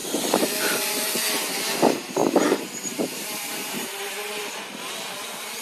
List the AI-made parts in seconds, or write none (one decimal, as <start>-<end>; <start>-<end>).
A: 0.0-0.5; 2.2-5.6